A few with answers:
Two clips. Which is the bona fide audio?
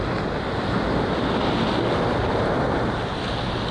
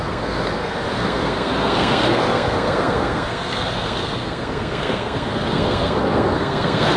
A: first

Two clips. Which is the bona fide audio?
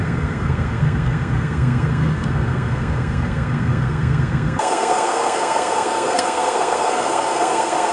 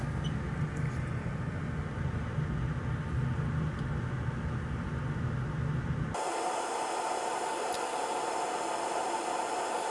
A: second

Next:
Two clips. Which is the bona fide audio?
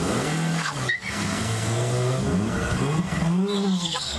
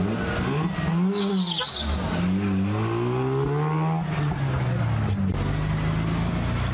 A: second